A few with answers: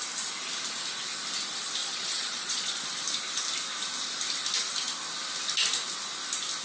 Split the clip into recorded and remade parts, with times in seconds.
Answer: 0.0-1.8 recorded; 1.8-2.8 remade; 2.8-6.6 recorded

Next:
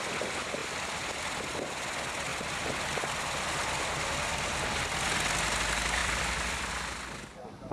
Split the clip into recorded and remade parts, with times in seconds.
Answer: 0.0-2.3 recorded; 2.3-3.1 remade; 3.1-6.0 recorded; 6.0-6.7 remade; 6.7-7.7 recorded

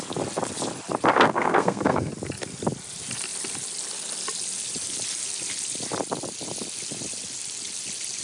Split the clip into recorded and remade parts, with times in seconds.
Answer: 0.0-1.1 recorded; 1.1-2.1 remade; 2.1-8.2 recorded